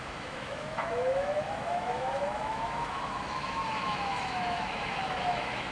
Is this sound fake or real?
fake